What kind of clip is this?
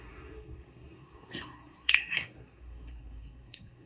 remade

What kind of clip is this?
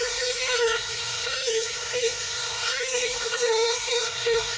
remade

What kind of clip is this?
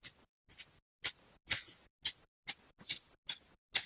recorded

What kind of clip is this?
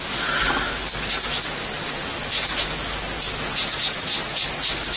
recorded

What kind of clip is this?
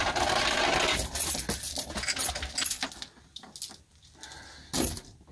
recorded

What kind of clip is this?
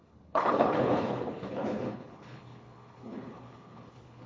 remade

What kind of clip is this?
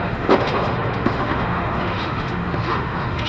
remade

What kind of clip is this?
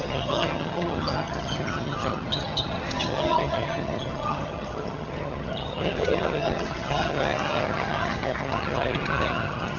remade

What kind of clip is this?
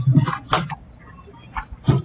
recorded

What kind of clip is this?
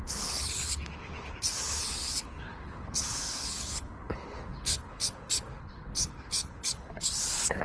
remade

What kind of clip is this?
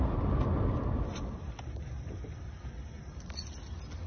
recorded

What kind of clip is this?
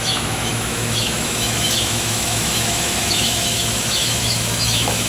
remade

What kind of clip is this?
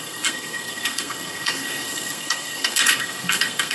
remade